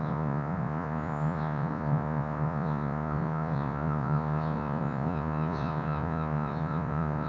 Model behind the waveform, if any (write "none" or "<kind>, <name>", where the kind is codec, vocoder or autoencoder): vocoder, Vocos